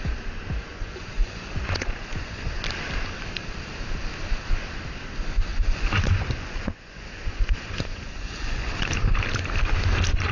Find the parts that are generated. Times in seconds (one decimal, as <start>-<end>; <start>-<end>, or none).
0.7-2.5; 5.5-8.7